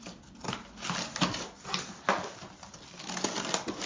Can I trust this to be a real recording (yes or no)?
yes